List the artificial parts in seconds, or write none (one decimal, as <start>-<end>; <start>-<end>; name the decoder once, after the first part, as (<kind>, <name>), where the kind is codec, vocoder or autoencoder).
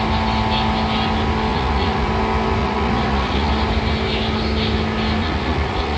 1.5-2.1 (vocoder, Vocos); 2.6-3.5; 5.2-6.0